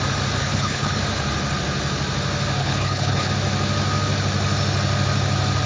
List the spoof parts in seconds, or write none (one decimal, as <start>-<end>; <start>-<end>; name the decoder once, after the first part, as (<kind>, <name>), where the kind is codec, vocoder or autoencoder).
0.4-1.0 (codec, HILCodec); 2.6-3.3